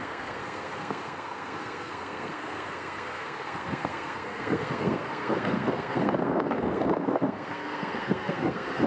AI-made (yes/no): yes